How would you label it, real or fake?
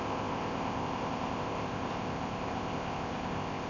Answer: fake